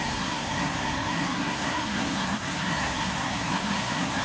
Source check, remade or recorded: remade